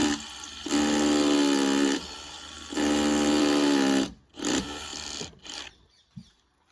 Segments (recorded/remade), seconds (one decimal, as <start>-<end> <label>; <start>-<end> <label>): 0.0-6.7 recorded